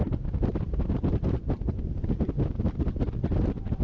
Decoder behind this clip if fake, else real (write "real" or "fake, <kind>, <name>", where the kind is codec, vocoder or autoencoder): real